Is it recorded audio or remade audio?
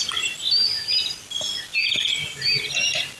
recorded